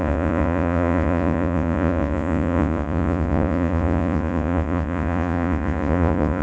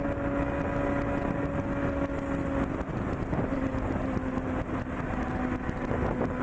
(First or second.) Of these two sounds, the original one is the second